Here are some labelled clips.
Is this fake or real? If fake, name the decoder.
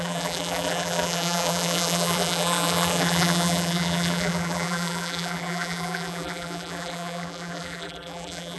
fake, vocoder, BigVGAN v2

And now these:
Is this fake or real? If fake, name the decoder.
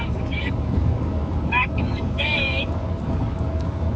fake, codec, DAC